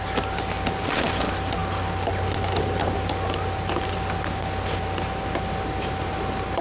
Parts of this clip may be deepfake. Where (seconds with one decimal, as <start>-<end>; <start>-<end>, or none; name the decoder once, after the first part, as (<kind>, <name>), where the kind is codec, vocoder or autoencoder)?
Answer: none